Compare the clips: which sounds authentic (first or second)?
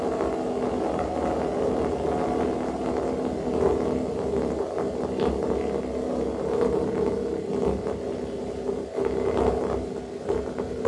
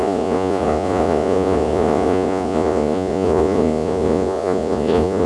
first